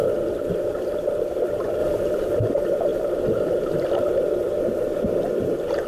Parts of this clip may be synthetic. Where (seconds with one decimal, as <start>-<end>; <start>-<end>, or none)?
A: 0.7-5.9